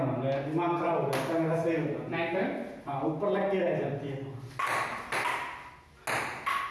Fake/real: real